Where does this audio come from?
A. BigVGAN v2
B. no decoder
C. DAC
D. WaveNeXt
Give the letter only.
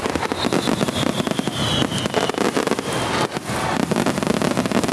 B